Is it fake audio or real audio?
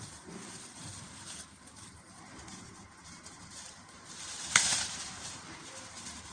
fake